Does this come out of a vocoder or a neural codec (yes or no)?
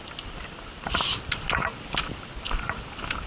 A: no